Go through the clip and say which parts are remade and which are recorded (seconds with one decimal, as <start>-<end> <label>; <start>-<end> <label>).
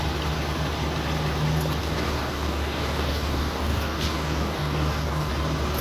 0.0-1.8 recorded; 1.8-5.3 remade; 5.3-5.8 recorded